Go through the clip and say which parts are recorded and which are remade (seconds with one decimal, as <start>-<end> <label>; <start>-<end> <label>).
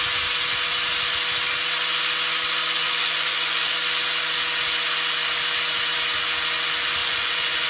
0.0-2.8 recorded; 2.8-3.7 remade; 3.7-7.0 recorded; 7.0-7.7 remade